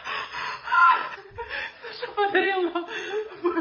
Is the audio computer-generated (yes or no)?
yes